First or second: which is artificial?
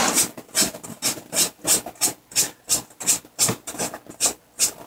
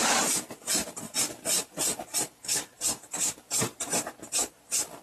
second